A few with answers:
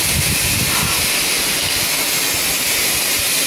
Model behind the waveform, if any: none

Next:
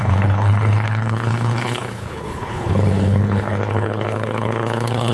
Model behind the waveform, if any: codec, HILCodec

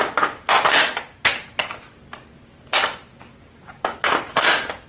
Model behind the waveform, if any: none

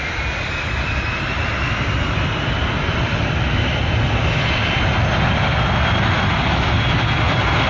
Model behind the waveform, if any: none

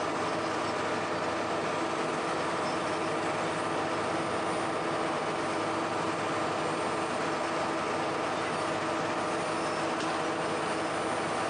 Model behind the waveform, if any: none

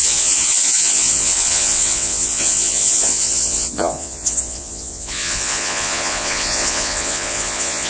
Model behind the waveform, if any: vocoder, Vocos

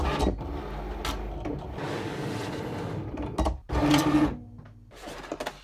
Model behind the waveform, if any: none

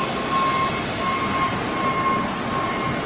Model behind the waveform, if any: none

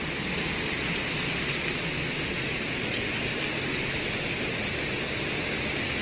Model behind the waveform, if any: none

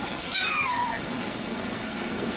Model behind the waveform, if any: codec, SNAC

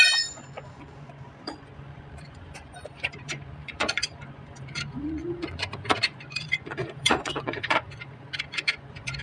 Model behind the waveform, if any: vocoder, Vocos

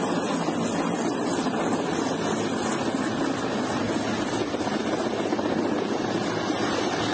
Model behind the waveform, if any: none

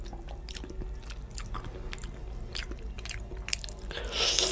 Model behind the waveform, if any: none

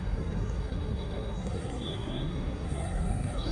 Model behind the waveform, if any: codec, SNAC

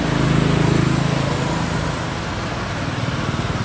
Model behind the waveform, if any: none